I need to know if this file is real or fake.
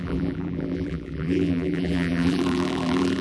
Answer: fake